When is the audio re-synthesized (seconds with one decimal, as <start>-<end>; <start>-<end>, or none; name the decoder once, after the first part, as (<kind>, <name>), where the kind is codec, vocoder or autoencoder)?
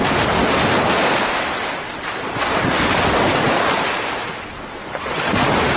none